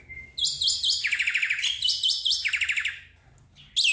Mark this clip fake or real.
real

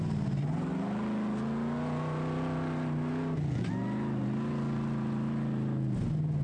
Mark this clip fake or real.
real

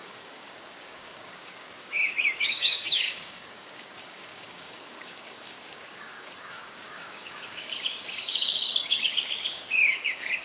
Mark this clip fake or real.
fake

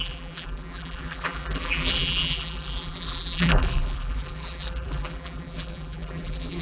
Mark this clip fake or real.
fake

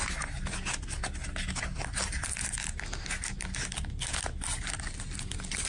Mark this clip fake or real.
real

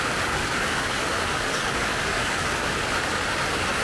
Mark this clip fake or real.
fake